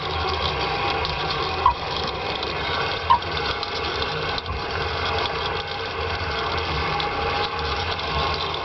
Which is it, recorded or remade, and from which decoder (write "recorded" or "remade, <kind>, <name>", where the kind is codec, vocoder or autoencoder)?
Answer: recorded